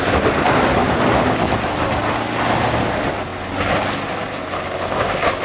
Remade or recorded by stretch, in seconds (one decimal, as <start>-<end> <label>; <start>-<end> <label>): 0.0-5.4 recorded